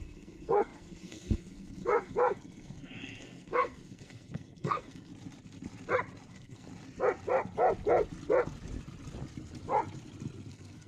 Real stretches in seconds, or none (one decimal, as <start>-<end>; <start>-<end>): 5.1-6.3; 6.7-10.5